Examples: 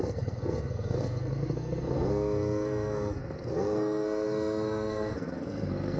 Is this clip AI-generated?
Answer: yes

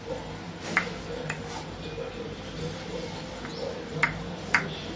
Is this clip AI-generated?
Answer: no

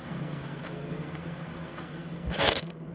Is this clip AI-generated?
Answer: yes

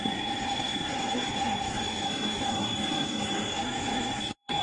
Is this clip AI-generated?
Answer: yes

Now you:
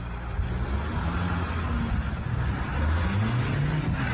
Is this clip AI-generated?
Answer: no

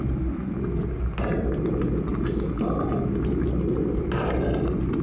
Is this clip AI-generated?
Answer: no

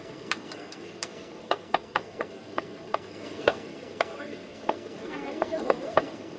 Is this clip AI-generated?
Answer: yes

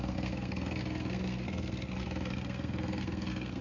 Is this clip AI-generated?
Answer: yes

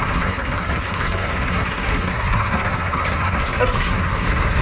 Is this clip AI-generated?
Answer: yes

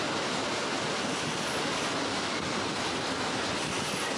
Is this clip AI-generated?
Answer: no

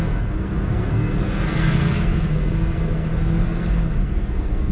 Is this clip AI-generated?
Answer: yes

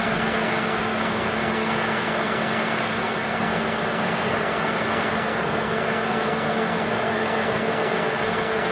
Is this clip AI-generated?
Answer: yes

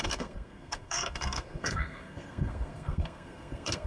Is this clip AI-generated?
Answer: yes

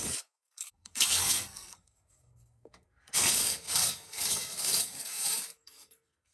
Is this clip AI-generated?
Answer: yes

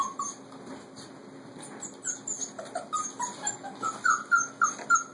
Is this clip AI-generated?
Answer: no